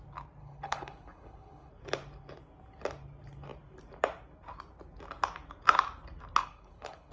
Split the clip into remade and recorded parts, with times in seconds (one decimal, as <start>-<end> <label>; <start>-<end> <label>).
0.0-0.4 recorded; 0.4-1.7 remade; 1.7-6.4 recorded; 6.4-7.1 remade

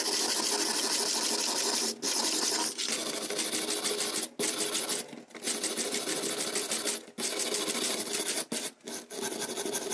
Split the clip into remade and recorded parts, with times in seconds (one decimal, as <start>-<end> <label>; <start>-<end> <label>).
0.0-9.9 recorded